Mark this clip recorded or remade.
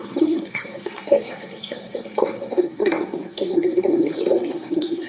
remade